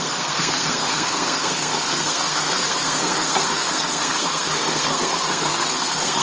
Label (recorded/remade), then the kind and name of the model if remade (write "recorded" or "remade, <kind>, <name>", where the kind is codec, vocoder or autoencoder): remade, codec, SNAC